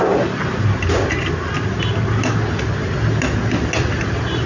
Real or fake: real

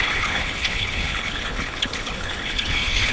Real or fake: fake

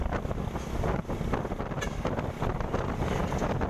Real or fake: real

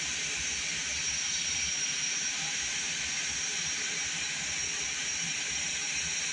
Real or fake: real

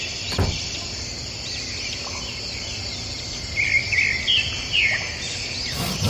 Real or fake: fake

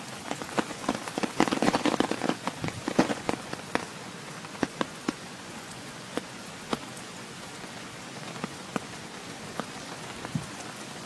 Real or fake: fake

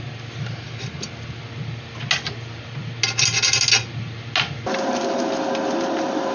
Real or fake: real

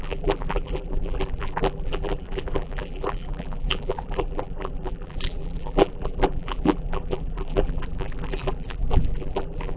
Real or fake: fake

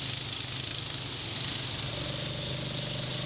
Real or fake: real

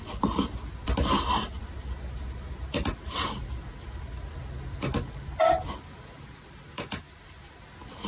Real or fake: real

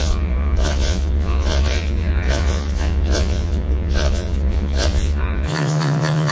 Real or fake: fake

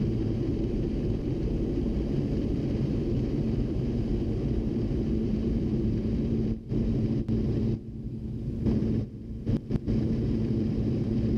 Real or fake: fake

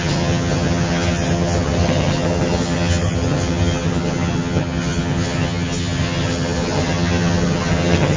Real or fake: fake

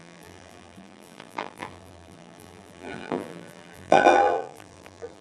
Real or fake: fake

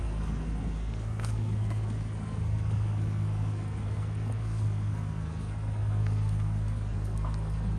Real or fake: fake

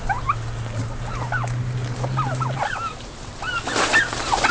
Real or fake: real